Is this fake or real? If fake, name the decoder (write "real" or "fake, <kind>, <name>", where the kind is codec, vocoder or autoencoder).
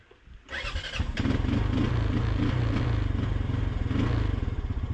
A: real